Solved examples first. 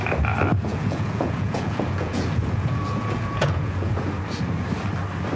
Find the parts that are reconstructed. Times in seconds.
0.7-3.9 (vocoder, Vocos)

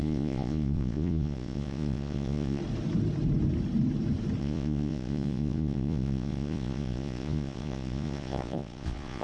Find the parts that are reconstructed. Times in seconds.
0.0-2.6 (vocoder, Vocos); 4.4-9.2

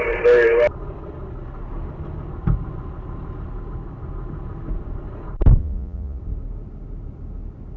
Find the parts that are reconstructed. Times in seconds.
5.6-6.2 (vocoder, Vocos)

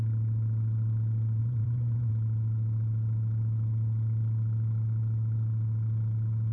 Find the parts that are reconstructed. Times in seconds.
1.4-2.1 (vocoder, Vocos)

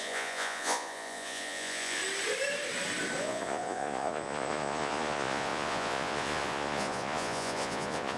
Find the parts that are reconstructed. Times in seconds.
0.0-2.0 (vocoder, Vocos); 3.2-8.2

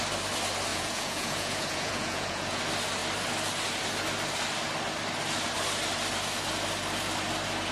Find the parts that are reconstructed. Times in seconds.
0.7-2.6 (vocoder, Vocos)

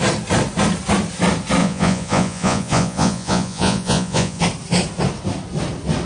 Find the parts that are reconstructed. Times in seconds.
1.6-4.4 (vocoder, Vocos)

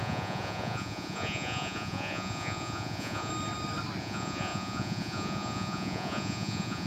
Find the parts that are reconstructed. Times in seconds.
0.0-3.3 (vocoder, Vocos); 4.0-6.9